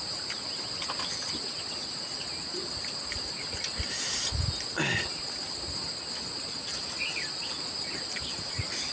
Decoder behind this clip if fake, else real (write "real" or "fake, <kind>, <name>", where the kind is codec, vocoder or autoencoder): real